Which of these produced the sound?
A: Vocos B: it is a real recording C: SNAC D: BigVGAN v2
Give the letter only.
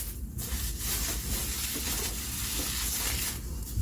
B